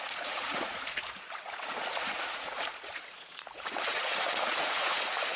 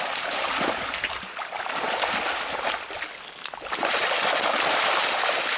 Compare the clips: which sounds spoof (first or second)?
first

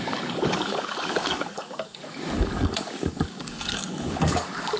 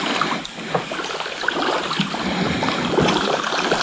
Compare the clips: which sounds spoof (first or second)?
first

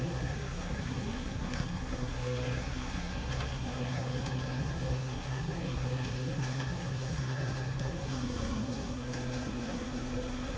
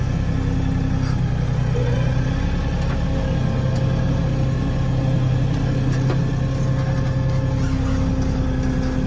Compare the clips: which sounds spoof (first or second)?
first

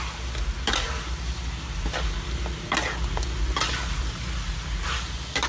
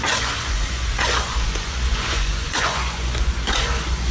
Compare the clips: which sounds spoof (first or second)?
second